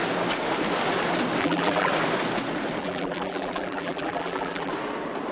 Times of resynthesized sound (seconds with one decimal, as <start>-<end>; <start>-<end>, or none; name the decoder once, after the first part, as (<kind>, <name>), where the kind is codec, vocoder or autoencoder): 1.4-1.9 (vocoder, BigVGAN v2); 2.8-4.7